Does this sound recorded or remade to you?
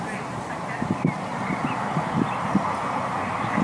recorded